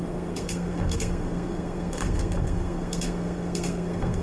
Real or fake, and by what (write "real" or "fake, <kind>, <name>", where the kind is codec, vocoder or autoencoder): fake, codec, SNAC